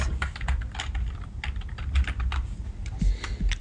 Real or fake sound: real